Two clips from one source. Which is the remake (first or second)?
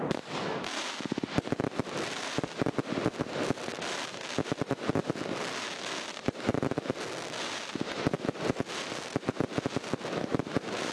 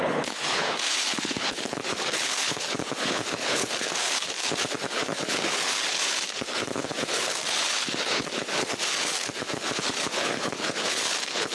second